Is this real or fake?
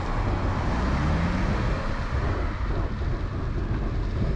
real